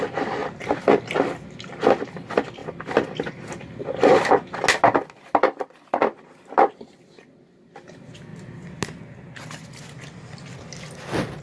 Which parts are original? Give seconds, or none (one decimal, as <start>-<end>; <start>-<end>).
0.0-11.4